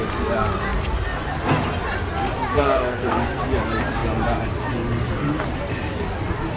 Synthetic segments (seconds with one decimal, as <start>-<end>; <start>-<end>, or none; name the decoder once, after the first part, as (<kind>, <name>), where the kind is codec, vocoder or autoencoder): 2.5-3.4 (codec, SNAC)